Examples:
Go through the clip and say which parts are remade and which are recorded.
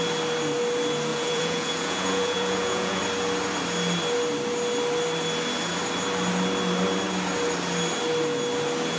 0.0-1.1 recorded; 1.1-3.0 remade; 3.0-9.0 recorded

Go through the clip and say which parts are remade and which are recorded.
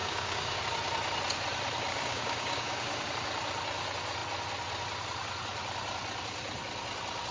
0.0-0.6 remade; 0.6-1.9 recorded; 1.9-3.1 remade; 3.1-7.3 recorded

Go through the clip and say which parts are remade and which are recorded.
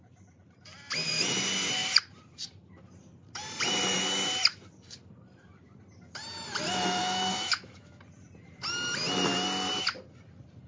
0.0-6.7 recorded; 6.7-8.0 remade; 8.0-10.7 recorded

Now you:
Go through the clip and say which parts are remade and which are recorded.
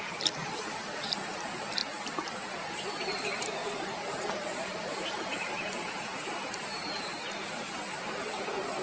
0.0-0.4 recorded; 0.4-1.4 remade; 1.4-3.6 recorded; 3.6-6.0 remade; 6.0-8.8 recorded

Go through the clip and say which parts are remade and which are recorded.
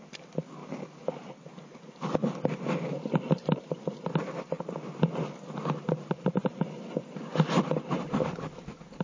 0.0-0.6 recorded; 0.6-4.1 remade; 4.1-9.0 recorded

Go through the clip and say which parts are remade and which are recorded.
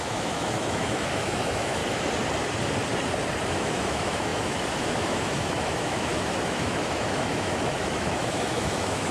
0.0-1.8 remade; 1.8-3.5 recorded; 3.5-9.1 remade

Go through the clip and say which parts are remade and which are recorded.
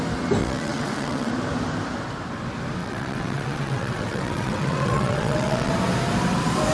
0.0-0.4 recorded; 0.4-1.3 remade; 1.3-2.8 recorded; 2.8-5.7 remade; 5.7-6.7 recorded